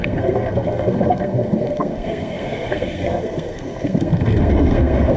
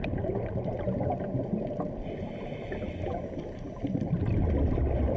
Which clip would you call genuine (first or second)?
second